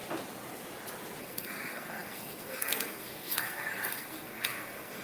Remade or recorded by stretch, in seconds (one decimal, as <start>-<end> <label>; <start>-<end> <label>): 0.0-1.2 recorded; 1.2-5.0 remade